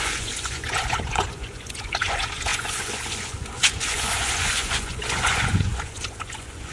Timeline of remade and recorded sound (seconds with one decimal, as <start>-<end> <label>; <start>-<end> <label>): 0.0-6.7 remade

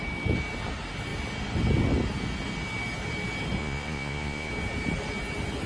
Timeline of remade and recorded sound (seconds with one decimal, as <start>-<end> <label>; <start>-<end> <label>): 0.0-3.6 recorded; 3.6-4.5 remade; 4.5-5.7 recorded